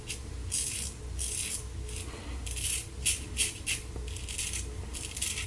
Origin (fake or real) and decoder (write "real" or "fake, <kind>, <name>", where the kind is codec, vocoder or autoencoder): real